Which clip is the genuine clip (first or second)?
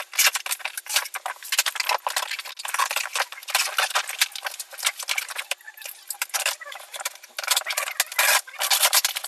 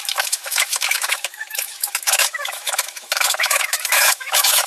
first